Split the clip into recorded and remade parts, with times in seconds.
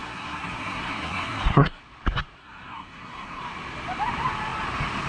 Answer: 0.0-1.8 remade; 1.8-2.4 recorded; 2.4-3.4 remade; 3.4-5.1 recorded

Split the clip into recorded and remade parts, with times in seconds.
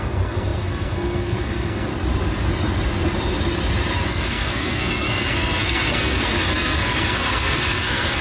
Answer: 0.0-1.9 remade; 1.9-4.1 recorded; 4.1-8.2 remade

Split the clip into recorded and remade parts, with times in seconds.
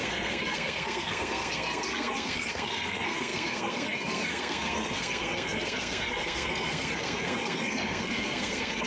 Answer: 0.0-8.9 remade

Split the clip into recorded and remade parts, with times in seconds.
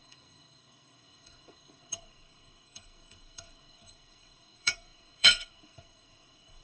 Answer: 0.0-6.6 remade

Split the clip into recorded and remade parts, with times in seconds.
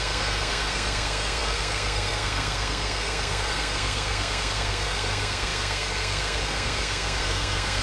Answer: 0.0-7.8 remade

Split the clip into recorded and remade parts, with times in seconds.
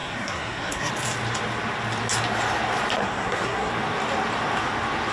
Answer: 0.0-0.9 remade; 0.9-3.0 recorded; 3.0-3.7 remade; 3.7-5.1 recorded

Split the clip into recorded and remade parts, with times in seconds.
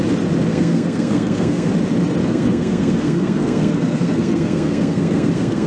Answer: 0.0-0.5 recorded; 0.5-1.7 remade; 1.7-2.2 recorded; 2.2-5.7 remade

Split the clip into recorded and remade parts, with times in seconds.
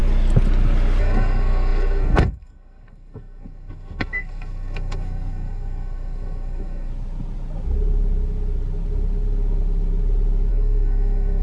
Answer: 0.0-1.0 recorded; 1.0-6.9 remade; 6.9-10.5 recorded; 10.5-11.4 remade